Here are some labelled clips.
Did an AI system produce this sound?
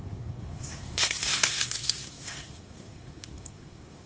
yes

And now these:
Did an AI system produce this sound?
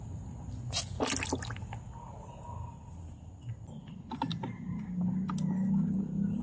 no